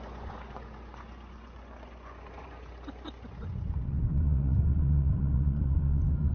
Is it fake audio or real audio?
fake